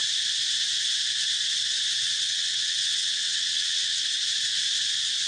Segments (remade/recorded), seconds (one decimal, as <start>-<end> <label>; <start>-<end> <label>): 0.0-2.0 recorded; 2.0-4.0 remade; 4.0-5.3 recorded